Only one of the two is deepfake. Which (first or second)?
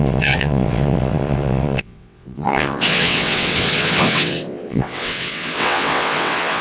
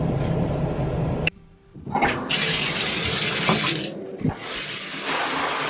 first